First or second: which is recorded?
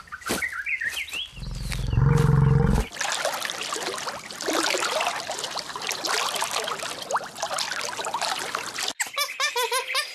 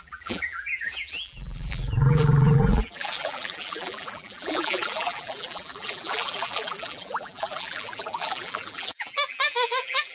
first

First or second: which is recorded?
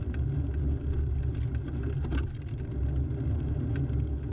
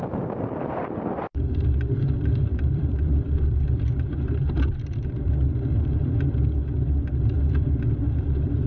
first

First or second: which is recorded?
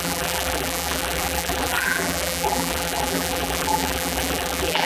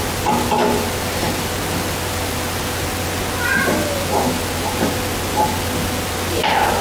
second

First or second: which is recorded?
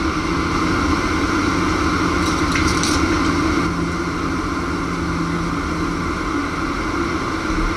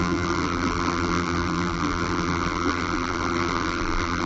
first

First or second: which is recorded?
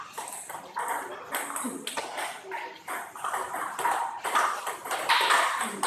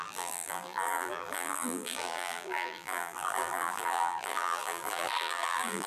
first